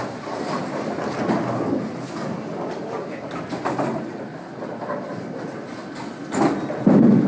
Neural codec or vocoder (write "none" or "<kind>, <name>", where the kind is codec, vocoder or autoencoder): none